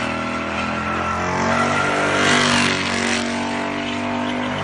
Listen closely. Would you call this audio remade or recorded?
recorded